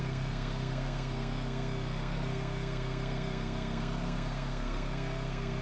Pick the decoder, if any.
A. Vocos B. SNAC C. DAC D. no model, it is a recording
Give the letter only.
B